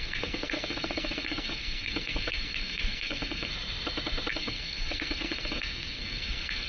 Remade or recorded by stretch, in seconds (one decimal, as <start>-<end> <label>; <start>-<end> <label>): 0.0-3.5 remade; 3.5-4.3 recorded; 4.3-6.7 remade